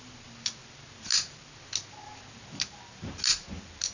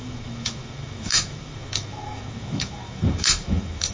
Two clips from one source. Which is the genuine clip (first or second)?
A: first